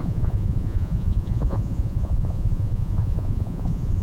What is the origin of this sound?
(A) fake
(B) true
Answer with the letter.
A